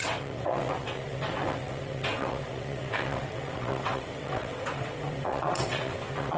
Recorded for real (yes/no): no